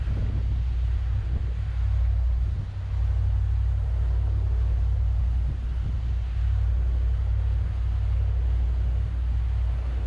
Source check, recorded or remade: recorded